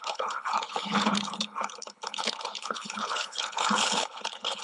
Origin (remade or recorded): remade